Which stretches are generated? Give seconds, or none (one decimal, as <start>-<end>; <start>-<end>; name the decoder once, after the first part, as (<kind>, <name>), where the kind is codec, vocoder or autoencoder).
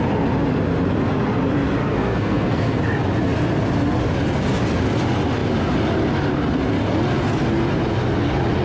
1.8-2.8 (codec, SNAC)